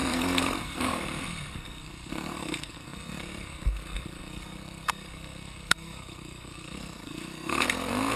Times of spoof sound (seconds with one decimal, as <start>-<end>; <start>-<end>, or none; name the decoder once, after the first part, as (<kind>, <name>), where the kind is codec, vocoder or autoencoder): 0.0-8.2 (codec, SNAC)